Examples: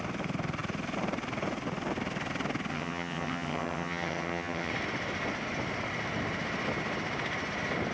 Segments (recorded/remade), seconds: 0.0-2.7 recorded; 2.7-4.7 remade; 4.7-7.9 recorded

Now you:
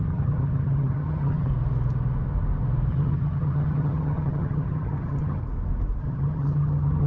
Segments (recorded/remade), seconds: 0.0-1.5 remade; 1.5-2.9 recorded; 2.9-5.4 remade; 5.4-6.0 recorded; 6.0-7.1 remade